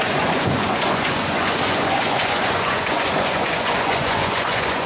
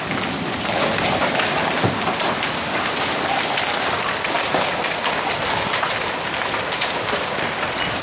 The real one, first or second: second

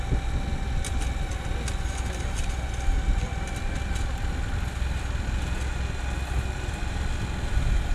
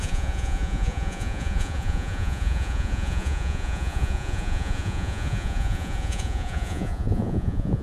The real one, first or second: first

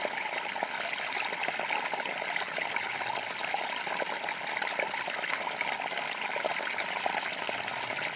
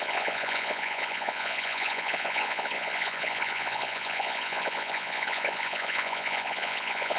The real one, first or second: first